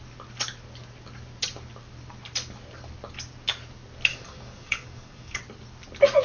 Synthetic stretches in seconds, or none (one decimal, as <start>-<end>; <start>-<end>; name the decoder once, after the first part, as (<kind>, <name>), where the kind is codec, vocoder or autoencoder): 4.1-5.4 (codec, DAC)